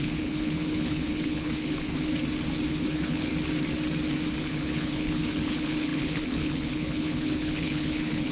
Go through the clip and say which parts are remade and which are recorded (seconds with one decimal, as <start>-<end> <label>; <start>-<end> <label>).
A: 0.0-1.9 remade; 1.9-2.7 recorded; 2.7-3.3 remade; 3.3-4.4 recorded; 4.4-8.3 remade